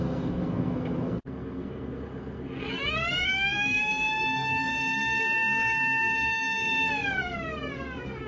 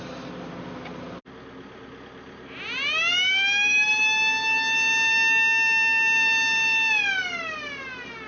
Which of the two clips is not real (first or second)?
first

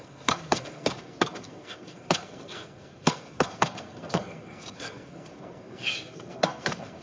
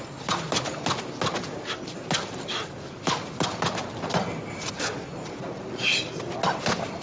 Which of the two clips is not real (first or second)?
first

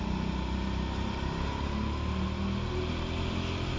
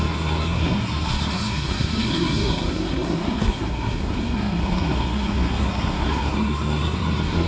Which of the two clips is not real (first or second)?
second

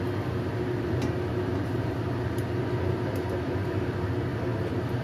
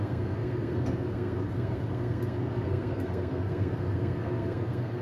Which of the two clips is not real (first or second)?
second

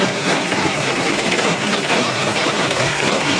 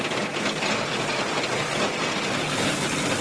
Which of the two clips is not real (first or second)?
first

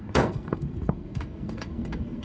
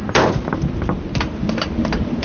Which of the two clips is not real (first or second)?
first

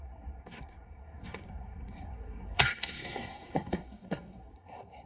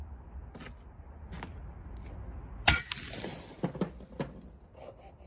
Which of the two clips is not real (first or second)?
first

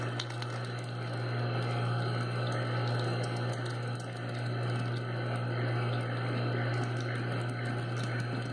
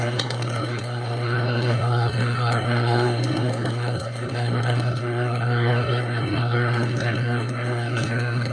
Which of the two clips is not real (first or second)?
second